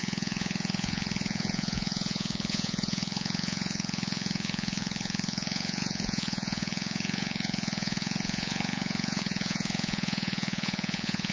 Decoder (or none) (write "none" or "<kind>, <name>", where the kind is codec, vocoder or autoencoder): vocoder, Vocos